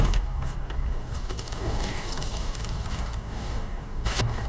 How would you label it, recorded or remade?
remade